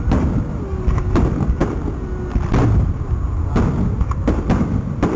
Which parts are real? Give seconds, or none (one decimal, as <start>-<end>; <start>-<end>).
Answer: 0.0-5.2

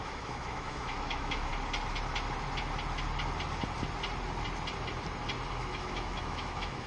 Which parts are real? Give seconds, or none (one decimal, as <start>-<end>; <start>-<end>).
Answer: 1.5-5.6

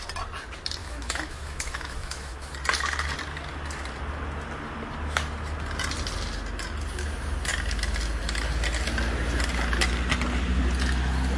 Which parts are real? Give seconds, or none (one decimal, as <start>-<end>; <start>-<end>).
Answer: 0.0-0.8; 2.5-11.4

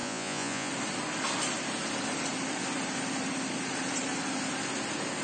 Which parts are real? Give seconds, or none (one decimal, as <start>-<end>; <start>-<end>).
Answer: 0.7-5.2